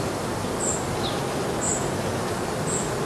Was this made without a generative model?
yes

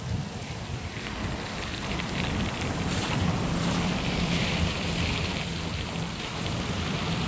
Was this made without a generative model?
no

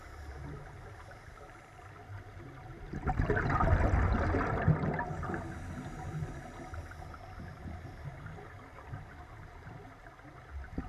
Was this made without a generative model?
yes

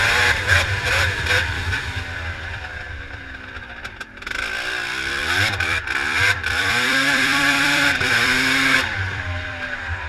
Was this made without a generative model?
no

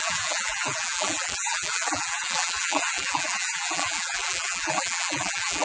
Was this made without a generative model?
no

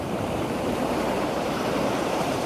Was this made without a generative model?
no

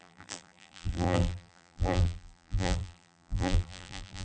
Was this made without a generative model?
no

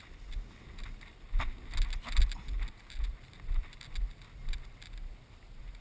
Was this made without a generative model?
yes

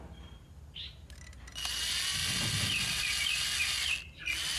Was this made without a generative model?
yes